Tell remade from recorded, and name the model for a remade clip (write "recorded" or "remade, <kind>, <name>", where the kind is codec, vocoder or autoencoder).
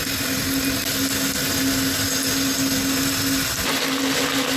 recorded